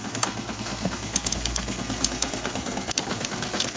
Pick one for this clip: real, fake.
fake